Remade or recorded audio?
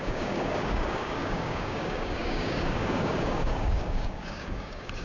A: remade